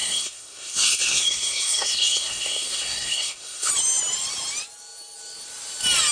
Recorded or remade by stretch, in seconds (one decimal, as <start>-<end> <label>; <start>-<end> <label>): 0.0-3.7 remade; 3.7-6.1 recorded